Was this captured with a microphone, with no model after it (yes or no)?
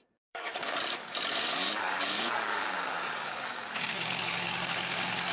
no